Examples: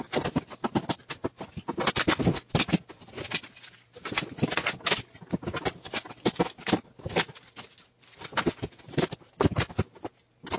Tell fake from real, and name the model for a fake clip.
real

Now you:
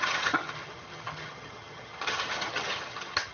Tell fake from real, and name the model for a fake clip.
fake, vocoder, HiFi-GAN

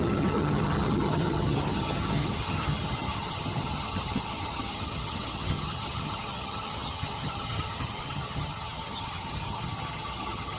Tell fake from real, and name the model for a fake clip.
fake, vocoder, HiFi-GAN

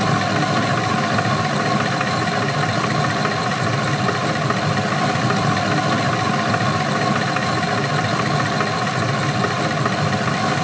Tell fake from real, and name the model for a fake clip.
real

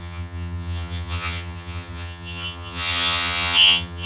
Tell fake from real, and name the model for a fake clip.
fake, vocoder, HiFi-GAN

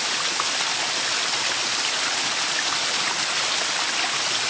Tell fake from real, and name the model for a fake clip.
real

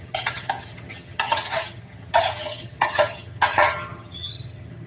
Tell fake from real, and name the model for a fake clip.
fake, vocoder, HiFi-GAN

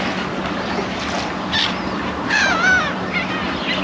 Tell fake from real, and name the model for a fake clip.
real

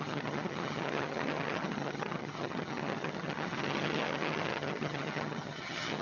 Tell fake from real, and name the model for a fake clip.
fake, vocoder, HiFi-GAN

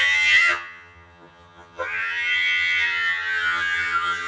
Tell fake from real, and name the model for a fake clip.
fake, vocoder, HiFi-GAN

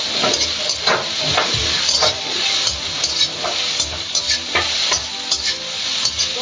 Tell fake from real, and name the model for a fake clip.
real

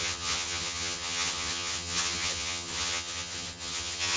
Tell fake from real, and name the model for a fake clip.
fake, vocoder, HiFi-GAN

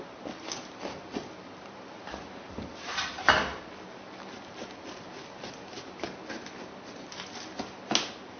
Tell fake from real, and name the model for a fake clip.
real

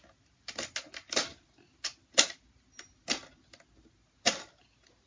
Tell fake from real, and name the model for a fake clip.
real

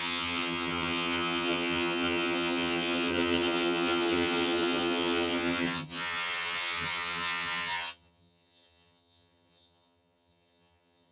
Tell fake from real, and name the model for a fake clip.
fake, vocoder, HiFi-GAN